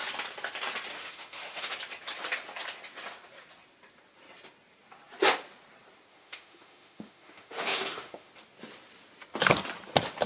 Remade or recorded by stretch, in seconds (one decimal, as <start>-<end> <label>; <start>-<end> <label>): 0.0-0.9 recorded; 0.9-1.7 remade; 1.7-6.1 recorded; 6.1-8.3 remade; 8.3-10.3 recorded